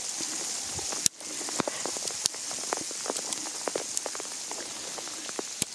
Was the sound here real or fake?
real